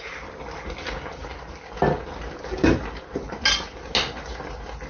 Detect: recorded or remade recorded